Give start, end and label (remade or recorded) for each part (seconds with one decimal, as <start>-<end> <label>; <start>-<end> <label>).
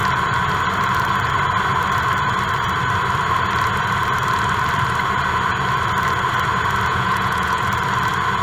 0.0-6.9 recorded; 6.9-7.6 remade; 7.6-8.4 recorded